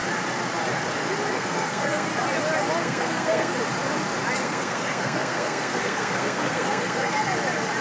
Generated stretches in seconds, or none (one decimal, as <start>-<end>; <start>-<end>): 1.3-2.1; 2.8-3.5; 4.4-7.1